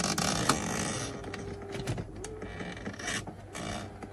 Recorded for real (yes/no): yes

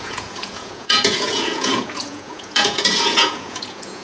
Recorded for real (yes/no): no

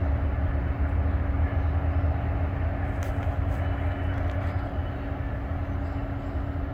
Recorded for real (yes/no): yes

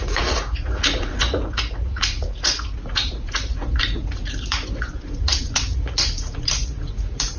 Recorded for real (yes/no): no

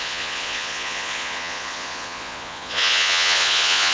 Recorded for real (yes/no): no